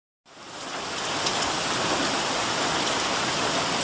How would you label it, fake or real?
real